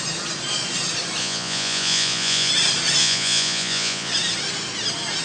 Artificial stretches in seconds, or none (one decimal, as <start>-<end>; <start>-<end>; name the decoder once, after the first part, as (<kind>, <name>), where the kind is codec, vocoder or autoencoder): 1.2-2.5 (vocoder, Vocos); 3.0-4.1